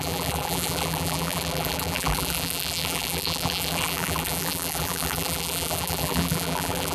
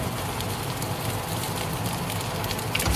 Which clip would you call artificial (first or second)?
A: first